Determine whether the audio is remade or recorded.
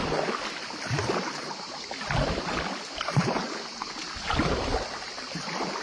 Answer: recorded